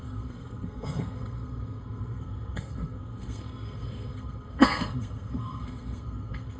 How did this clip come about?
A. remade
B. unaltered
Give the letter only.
A